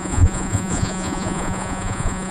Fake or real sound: fake